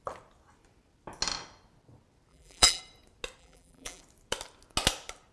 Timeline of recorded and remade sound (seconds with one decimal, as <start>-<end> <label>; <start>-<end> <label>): 0.0-2.3 recorded; 2.3-2.8 remade; 2.8-3.4 recorded; 3.4-4.0 remade; 4.0-5.3 recorded